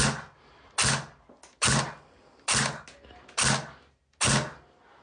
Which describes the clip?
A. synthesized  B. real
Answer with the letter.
B